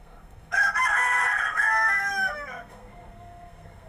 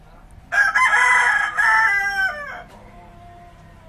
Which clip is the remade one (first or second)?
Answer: first